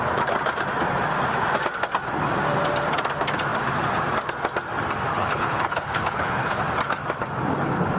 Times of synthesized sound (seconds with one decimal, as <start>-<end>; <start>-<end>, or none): 5.1-6.6